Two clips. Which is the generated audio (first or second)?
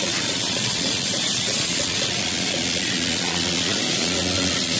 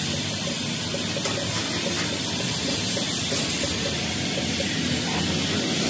first